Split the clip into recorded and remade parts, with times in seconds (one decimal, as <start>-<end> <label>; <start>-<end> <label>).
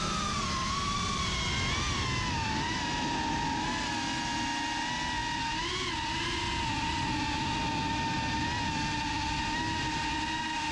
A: 0.0-10.7 recorded